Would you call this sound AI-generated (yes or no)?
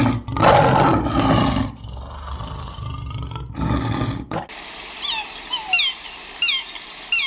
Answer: no